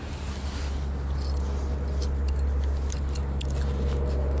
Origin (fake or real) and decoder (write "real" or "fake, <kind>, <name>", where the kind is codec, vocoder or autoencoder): real